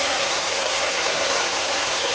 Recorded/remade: remade